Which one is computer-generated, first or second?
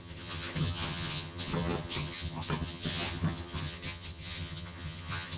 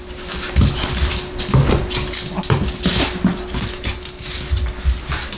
first